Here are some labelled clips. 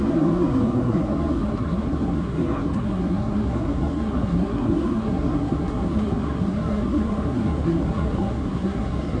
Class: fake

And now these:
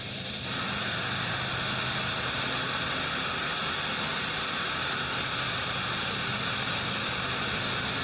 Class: real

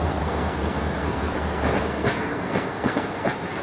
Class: fake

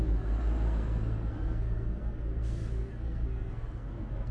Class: fake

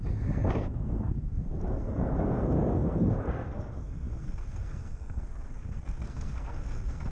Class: fake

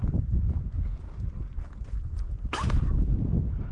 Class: real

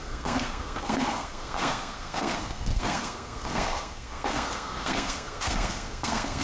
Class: fake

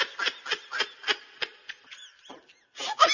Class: real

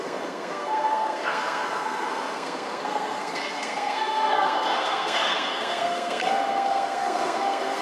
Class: fake